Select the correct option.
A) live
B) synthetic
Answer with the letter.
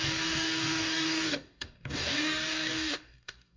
B